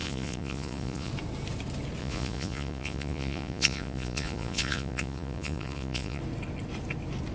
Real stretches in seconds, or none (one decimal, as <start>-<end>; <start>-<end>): 1.1-2.0; 6.2-7.3